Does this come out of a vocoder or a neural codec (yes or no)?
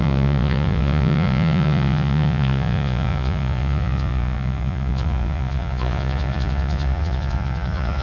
yes